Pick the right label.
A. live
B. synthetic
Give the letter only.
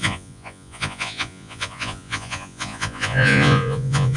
B